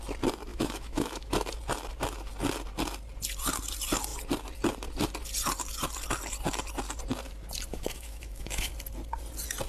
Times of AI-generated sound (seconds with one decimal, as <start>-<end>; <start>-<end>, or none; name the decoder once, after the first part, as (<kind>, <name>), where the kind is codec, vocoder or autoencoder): 0.5-1.3 (autoencoder, DAC-VAE); 7.7-8.7